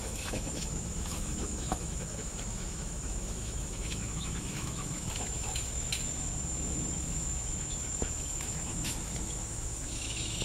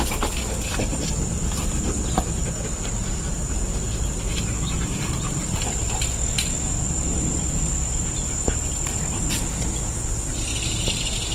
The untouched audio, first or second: second